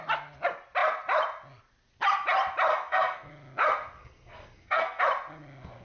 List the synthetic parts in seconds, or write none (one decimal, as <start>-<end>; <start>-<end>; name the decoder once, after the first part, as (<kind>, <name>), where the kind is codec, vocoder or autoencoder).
2.7-3.3 (codec, SNAC); 4.0-5.0